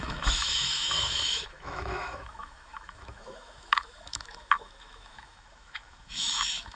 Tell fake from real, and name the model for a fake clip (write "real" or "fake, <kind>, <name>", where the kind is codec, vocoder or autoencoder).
fake, autoencoder, DAC-VAE